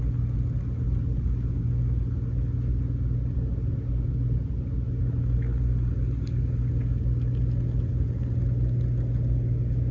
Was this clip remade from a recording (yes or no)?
no